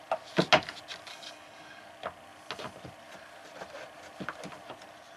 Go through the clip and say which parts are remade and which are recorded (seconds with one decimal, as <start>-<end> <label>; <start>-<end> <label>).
0.0-1.1 recorded; 1.1-1.8 remade; 1.8-5.2 recorded